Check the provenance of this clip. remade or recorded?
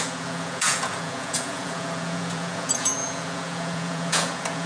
remade